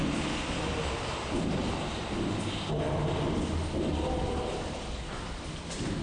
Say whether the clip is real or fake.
real